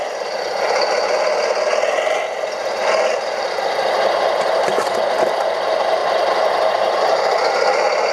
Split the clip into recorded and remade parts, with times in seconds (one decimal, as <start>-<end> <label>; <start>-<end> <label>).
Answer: 0.0-8.1 recorded